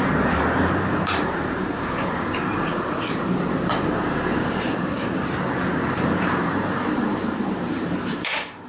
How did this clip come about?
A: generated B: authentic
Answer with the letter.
A